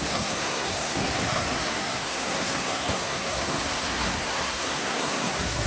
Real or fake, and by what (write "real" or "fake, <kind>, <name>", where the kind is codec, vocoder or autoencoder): fake, codec, SNAC